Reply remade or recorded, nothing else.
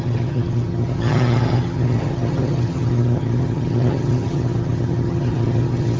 remade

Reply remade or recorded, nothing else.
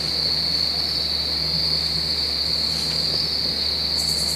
recorded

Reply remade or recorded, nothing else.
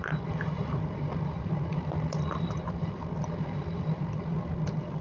remade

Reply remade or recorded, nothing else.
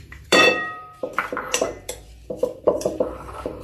remade